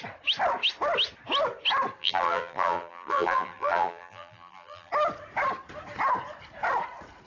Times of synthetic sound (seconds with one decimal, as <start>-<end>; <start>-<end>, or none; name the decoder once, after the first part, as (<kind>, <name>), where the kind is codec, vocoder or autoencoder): 2.0-4.9 (vocoder, BigVGAN v2)